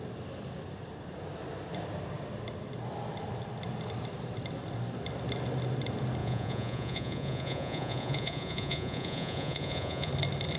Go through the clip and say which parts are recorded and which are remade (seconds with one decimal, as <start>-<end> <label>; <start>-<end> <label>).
0.0-6.2 recorded; 6.2-10.1 remade; 10.1-10.6 recorded